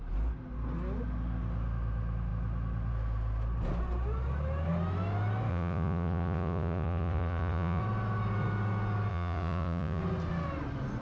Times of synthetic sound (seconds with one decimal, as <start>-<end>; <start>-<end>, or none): 5.5-7.8; 9.1-10.0